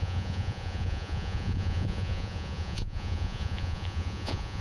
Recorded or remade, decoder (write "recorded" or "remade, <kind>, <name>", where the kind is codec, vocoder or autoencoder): remade, vocoder, Vocos